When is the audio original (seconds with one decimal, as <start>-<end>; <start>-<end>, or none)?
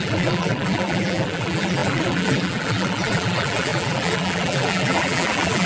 none